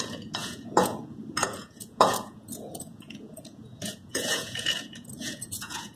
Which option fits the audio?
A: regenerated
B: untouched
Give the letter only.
A